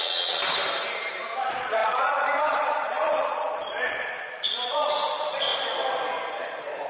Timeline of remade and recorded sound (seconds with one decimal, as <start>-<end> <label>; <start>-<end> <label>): 0.0-0.4 remade; 0.4-1.4 recorded; 1.4-5.5 remade; 5.5-6.3 recorded; 6.3-6.9 remade